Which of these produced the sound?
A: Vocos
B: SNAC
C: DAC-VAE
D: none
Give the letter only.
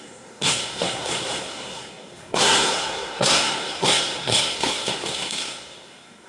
B